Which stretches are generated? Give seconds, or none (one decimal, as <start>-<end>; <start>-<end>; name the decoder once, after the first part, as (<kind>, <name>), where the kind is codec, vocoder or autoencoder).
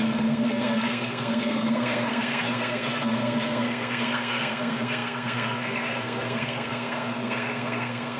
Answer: 0.0-8.2 (codec, SNAC)